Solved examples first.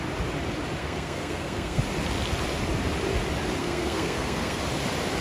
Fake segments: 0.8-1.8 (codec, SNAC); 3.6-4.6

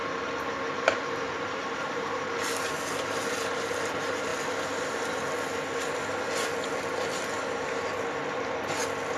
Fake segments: 0.7-4.3 (vocoder, BigVGAN v2)

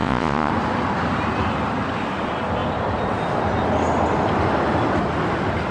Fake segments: 0.0-0.5 (vocoder, Vocos)

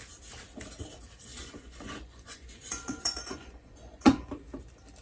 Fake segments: 1.3-4.3 (vocoder, Vocos)